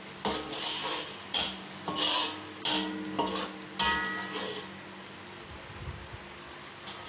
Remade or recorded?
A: recorded